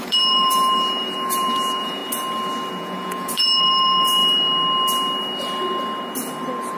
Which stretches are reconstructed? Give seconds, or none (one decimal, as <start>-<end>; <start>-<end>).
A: 0.0-2.0; 2.7-4.2